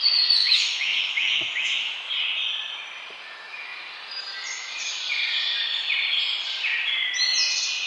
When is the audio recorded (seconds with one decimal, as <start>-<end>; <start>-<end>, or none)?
0.0-0.4; 2.1-7.9

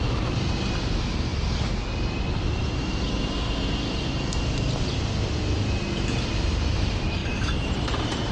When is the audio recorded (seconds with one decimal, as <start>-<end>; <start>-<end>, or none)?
1.3-6.3

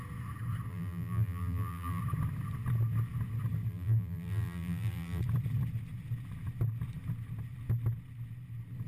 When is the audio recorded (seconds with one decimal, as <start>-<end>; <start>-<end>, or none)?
0.0-0.7; 2.0-3.7; 5.2-8.9